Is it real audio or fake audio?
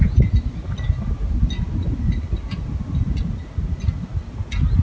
real